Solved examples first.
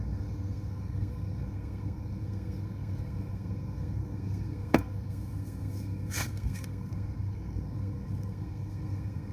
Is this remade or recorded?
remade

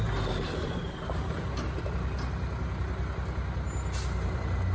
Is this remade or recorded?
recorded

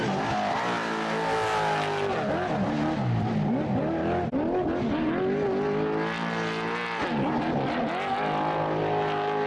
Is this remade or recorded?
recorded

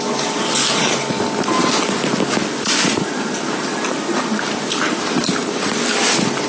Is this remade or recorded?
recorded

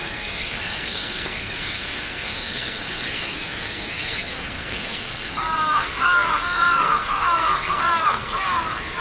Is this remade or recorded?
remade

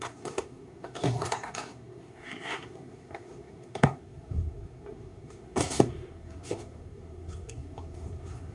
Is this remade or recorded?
remade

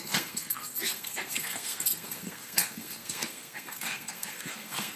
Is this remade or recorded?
remade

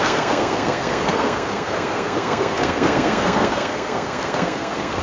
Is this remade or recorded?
remade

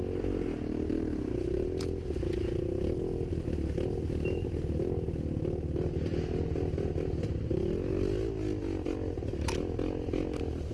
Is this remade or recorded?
recorded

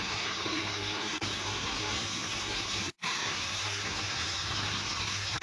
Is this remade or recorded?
remade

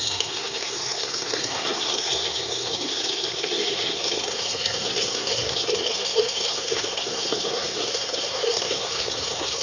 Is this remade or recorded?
remade